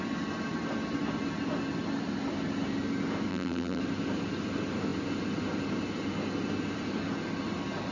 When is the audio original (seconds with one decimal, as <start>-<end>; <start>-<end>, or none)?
0.0-3.3; 3.8-7.9